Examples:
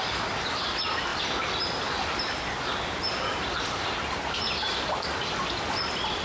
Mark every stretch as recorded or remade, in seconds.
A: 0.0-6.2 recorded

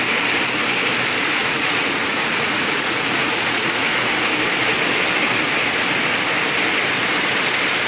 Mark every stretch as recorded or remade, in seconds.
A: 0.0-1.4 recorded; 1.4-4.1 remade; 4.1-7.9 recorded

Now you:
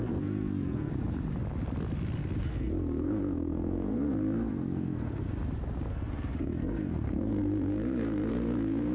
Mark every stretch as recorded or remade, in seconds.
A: 0.0-0.9 remade; 0.9-2.4 recorded; 2.4-5.3 remade; 5.3-5.9 recorded; 5.9-8.9 remade